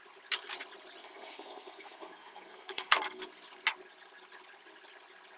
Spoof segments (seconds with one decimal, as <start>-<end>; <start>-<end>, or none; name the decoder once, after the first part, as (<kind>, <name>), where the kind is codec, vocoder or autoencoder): 1.0-3.2 (codec, SNAC)